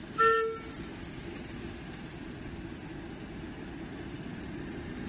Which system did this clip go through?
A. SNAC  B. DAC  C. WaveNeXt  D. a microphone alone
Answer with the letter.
D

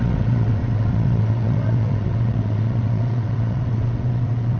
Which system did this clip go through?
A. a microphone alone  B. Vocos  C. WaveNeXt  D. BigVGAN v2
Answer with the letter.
C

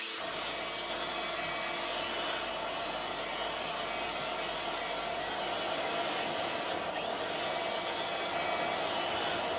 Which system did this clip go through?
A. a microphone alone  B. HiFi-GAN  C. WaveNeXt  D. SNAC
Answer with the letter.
A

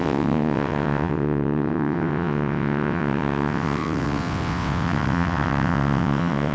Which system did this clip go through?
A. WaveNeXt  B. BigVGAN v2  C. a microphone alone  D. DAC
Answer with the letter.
A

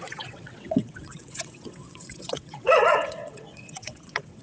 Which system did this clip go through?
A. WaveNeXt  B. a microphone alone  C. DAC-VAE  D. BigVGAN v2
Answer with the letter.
A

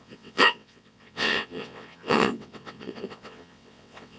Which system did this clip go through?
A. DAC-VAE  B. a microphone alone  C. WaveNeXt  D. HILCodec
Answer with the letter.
C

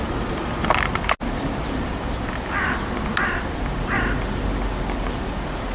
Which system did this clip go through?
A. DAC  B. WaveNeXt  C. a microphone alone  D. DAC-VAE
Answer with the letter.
C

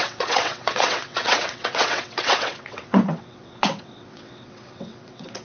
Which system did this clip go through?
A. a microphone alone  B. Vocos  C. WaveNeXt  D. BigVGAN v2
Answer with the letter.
C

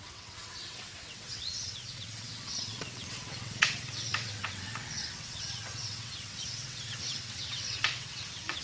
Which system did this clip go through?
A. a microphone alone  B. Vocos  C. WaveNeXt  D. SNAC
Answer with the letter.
C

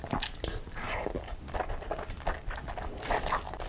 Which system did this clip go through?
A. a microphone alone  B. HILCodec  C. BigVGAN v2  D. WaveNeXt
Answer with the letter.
A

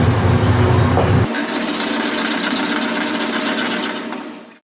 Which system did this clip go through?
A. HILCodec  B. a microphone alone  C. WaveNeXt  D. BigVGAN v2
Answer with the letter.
B